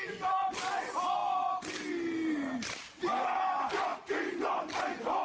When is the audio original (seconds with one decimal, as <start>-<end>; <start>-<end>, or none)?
0.0-3.9; 4.6-5.2